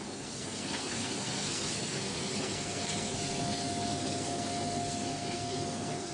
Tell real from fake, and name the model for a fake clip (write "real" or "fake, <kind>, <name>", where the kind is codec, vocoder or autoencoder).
fake, codec, SNAC